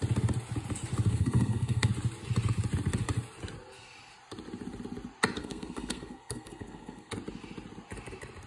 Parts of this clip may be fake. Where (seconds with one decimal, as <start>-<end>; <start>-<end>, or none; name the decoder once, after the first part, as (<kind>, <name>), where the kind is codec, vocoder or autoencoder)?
1.1-1.9 (codec, SNAC); 5.4-7.1